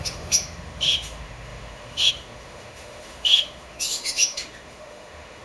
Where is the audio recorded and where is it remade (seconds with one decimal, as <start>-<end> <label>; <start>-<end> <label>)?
0.0-5.4 remade